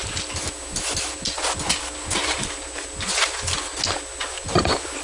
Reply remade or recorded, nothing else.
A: recorded